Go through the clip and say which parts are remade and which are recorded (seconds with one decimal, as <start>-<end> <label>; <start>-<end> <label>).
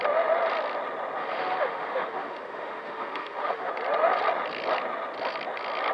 0.0-1.2 recorded; 1.2-3.7 remade; 3.7-5.9 recorded